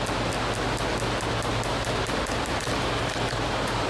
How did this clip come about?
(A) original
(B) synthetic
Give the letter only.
A